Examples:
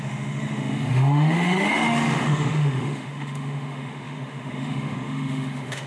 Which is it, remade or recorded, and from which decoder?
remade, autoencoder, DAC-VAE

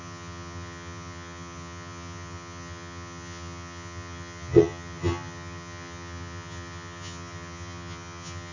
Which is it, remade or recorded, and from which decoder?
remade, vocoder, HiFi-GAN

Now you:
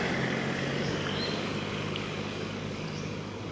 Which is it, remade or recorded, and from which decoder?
remade, codec, DAC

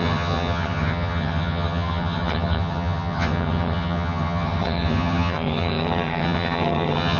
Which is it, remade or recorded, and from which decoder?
remade, vocoder, HiFi-GAN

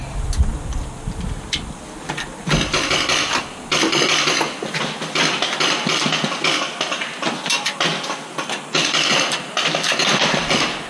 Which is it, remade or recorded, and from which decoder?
recorded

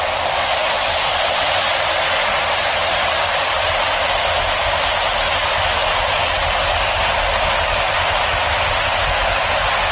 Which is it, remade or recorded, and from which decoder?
recorded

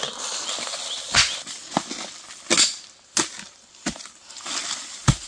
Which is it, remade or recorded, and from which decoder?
recorded